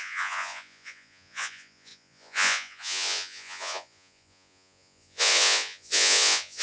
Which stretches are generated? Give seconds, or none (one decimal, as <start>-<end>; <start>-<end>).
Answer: 0.0-6.6